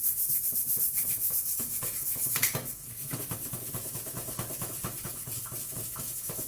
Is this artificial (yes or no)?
yes